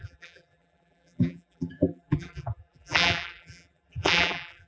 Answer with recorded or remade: remade